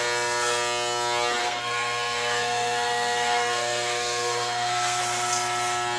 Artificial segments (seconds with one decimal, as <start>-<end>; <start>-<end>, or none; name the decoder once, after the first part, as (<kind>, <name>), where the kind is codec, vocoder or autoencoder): 1.4-5.0 (codec, SNAC)